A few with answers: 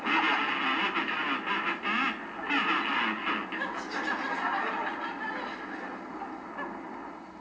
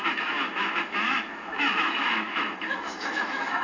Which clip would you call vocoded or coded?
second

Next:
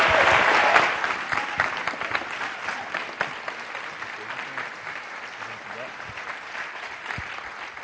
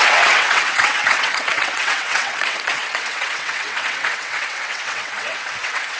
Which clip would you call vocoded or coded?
second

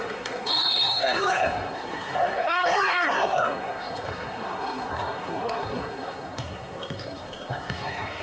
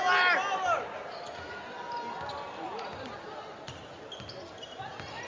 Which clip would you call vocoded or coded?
first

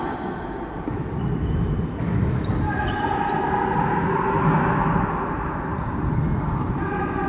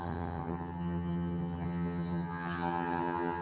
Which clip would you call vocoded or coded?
second